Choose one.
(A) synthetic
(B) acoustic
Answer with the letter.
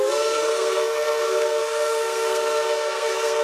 A